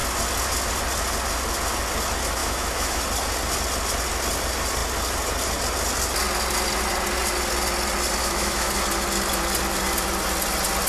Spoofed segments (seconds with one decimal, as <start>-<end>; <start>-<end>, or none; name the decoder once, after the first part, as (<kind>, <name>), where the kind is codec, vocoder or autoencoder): 2.4-3.0 (autoencoder, DAC-VAE); 8.2-8.7